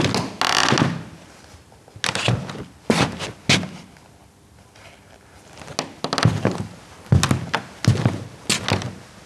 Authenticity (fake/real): real